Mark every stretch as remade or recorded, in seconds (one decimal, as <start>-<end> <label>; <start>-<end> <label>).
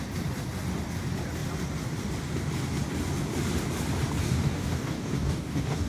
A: 0.0-4.2 recorded; 4.2-5.9 remade